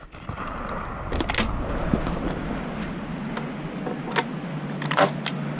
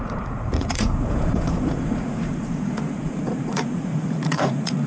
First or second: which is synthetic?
second